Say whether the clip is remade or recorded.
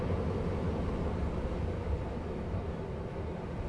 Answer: recorded